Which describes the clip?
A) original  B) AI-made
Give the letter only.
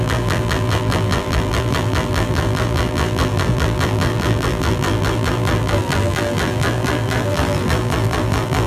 B